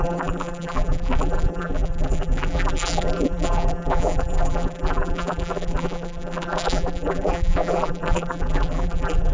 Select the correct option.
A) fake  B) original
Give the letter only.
A